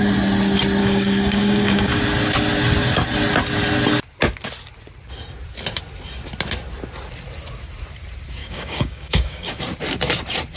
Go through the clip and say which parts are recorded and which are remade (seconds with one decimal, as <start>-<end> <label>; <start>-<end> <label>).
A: 0.0-0.8 recorded; 0.8-2.0 remade; 2.0-8.4 recorded; 8.4-9.6 remade; 9.6-10.6 recorded